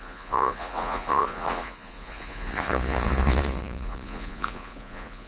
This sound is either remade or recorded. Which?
remade